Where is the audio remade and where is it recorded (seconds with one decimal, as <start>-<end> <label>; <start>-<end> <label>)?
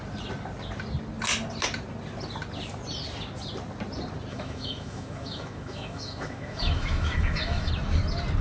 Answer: 0.0-4.3 recorded; 4.3-7.7 remade; 7.7-8.4 recorded